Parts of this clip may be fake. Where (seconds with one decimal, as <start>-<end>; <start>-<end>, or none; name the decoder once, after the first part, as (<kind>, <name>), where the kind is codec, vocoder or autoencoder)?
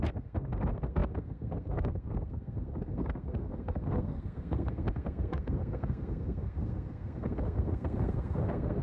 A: 0.0-8.8 (codec, SNAC)